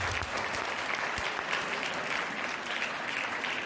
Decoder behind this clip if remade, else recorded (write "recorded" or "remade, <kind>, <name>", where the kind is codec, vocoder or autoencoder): recorded